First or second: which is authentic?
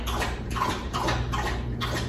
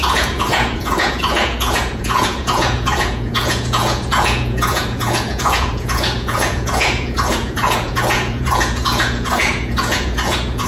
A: first